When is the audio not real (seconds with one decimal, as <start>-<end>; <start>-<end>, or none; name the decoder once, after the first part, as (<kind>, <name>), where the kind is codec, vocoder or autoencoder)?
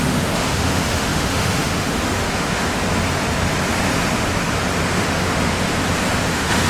0.0-2.8 (autoencoder, DAC-VAE); 4.9-5.7; 6.3-6.7